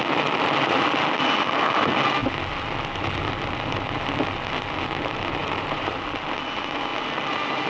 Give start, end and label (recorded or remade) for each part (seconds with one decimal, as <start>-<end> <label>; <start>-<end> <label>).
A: 0.0-5.4 recorded; 5.4-5.9 remade; 5.9-7.7 recorded